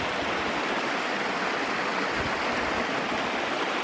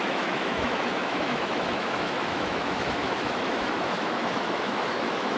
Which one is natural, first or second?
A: first